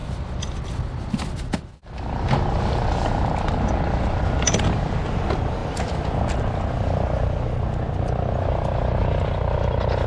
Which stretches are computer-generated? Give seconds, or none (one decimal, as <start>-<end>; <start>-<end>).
none